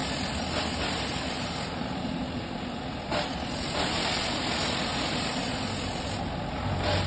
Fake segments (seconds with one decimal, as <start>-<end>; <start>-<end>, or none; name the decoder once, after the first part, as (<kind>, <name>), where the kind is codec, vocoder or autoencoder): 0.0-3.1 (vocoder, BigVGAN v2); 4.9-5.5